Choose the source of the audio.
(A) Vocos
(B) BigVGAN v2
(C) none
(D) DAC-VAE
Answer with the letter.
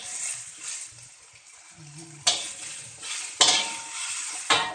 C